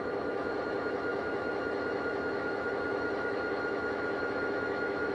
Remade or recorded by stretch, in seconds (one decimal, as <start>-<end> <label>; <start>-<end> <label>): 0.0-5.1 remade